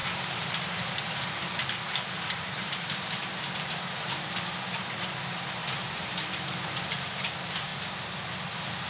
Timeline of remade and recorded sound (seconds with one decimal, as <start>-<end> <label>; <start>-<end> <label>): 0.0-7.7 remade; 7.7-8.9 recorded